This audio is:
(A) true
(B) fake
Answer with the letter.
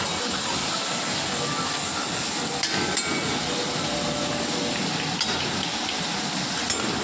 A